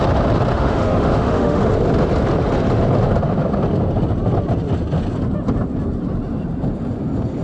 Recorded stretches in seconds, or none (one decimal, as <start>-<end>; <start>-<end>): 0.0-0.5; 1.6-7.4

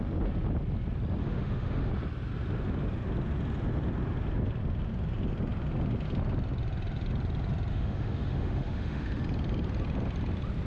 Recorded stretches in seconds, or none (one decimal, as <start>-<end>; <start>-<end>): 0.0-1.2; 1.9-7.7; 9.2-10.7

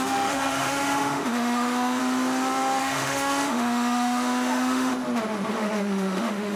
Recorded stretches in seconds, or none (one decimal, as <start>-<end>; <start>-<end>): 2.0-2.8; 4.9-5.5

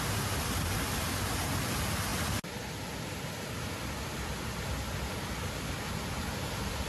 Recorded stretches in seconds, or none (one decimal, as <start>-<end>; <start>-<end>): 0.0-6.9

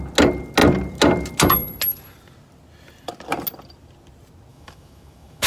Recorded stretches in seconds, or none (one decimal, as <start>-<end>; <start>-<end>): 0.0-4.5

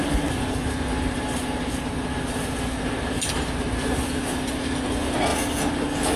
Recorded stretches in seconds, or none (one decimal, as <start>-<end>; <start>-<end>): 0.0-6.2

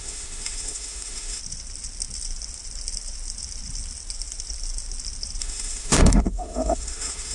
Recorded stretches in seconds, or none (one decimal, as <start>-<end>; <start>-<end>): 1.4-5.4